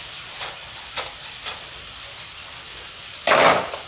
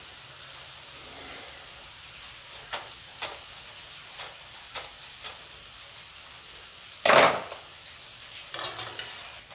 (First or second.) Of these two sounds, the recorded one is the second